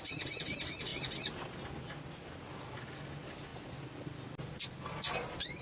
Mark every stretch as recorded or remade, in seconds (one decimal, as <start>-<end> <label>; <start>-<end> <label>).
0.0-5.6 recorded